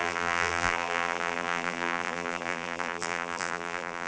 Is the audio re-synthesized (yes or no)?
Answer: yes